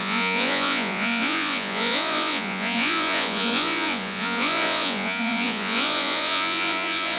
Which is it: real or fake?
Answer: fake